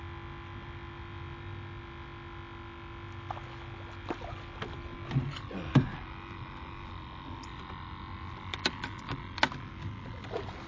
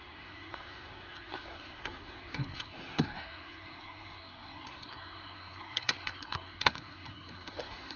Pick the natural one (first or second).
first